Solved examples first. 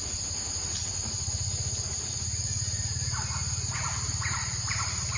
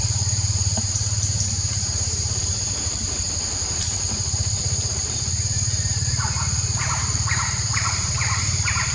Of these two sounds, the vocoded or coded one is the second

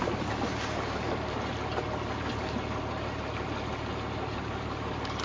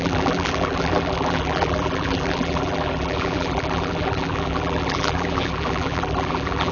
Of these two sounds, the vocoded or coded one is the second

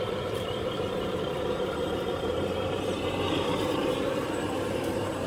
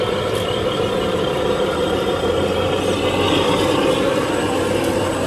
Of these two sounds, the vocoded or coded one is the first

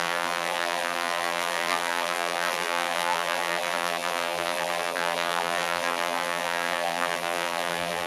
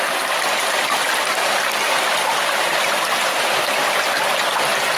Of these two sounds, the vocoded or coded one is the first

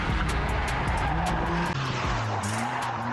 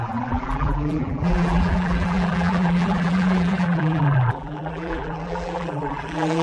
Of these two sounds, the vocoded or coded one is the second